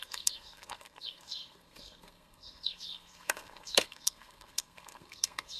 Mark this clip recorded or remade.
remade